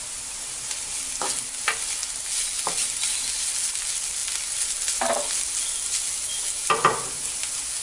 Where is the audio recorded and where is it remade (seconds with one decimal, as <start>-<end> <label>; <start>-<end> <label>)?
0.0-7.8 recorded